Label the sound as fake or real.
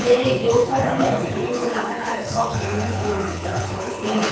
fake